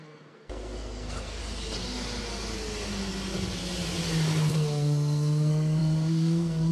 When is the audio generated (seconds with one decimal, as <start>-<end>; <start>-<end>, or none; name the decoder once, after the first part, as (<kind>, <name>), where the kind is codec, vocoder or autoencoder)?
0.0-1.4 (codec, SNAC); 4.5-6.7